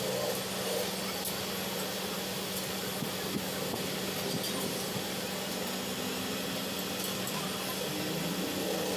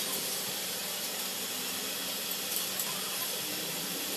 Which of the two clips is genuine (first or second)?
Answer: first